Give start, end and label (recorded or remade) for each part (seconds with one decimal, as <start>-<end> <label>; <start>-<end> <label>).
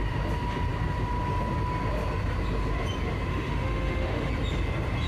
0.0-3.3 recorded; 3.3-4.3 remade; 4.3-5.1 recorded